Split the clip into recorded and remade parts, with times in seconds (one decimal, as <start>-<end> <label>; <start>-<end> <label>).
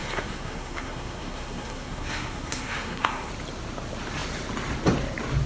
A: 0.0-3.3 remade; 3.3-5.5 recorded